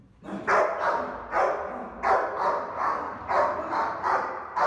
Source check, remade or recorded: recorded